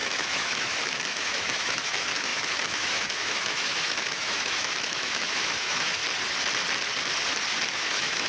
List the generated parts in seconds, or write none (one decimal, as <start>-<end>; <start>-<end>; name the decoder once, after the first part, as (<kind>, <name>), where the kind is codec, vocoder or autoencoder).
0.0-6.0 (autoencoder, DAC-VAE); 7.8-8.3